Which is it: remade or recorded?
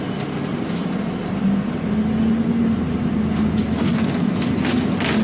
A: recorded